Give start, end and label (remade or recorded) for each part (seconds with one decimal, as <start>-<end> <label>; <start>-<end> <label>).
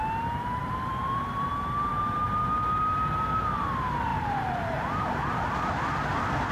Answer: 0.0-0.6 recorded; 0.6-1.5 remade; 1.5-4.1 recorded; 4.1-5.4 remade; 5.4-6.5 recorded